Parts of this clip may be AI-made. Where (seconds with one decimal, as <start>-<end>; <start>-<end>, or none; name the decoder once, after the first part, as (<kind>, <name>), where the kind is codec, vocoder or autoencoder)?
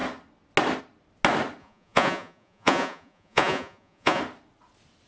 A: 1.6-4.2 (vocoder, Vocos)